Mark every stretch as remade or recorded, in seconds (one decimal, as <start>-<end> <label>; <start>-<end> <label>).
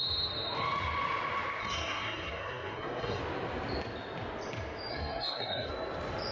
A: 0.0-1.6 recorded; 1.6-3.2 remade; 3.2-4.9 recorded; 4.9-5.7 remade; 5.7-6.3 recorded